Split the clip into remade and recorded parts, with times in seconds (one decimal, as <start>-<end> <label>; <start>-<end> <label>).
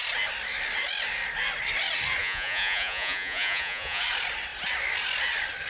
0.0-2.2 recorded; 2.2-4.0 remade; 4.0-5.7 recorded